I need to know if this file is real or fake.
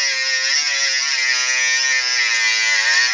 real